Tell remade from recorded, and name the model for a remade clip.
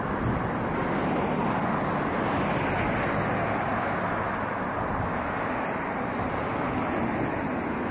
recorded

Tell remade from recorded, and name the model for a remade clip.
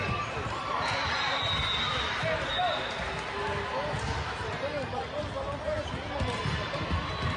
recorded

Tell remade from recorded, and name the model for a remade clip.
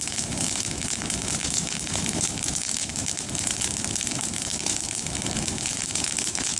remade, autoencoder, DAC-VAE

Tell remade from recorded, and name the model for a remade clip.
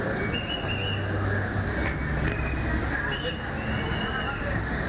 recorded